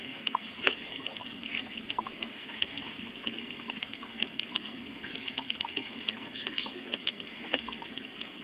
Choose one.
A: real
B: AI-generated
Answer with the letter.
B